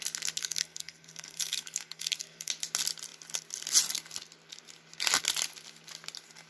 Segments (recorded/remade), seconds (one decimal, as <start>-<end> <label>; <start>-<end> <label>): 0.0-0.4 recorded; 0.4-2.5 remade; 2.5-6.5 recorded